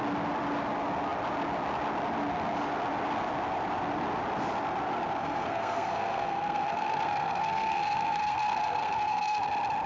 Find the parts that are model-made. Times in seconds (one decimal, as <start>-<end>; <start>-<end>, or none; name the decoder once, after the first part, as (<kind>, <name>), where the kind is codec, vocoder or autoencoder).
5.2-9.5 (codec, SNAC)